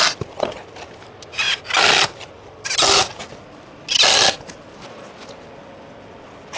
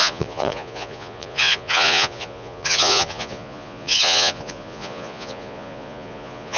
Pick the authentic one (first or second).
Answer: first